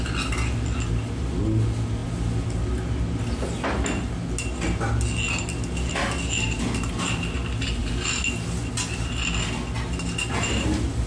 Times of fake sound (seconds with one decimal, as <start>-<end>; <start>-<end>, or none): none